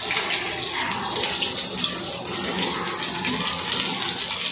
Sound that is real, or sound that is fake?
real